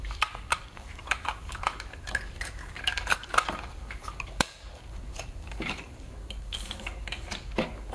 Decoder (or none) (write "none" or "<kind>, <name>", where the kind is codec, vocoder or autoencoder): codec, DAC